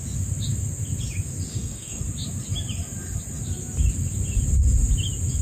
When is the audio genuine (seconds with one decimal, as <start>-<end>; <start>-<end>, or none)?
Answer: 0.0-1.5; 2.0-5.4